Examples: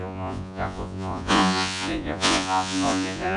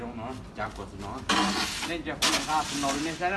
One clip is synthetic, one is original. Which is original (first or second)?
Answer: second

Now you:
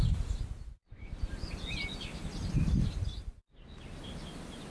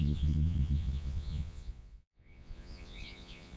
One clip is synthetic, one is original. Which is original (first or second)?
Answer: first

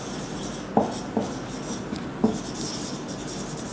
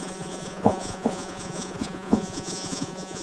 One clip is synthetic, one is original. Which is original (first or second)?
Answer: first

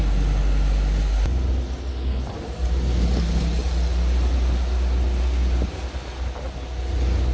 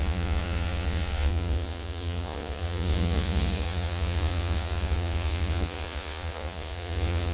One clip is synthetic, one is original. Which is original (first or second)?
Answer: first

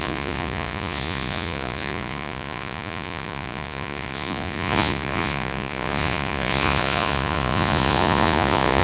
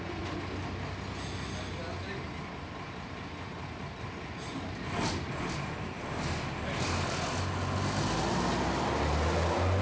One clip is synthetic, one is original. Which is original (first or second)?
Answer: second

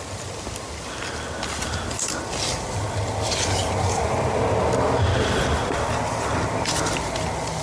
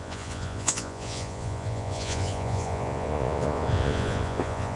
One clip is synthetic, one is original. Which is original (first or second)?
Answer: first